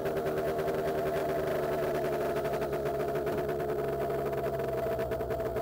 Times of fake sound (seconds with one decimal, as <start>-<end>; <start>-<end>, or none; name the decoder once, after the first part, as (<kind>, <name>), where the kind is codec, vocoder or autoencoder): 0.0-0.7 (vocoder, BigVGAN v2); 1.2-3.6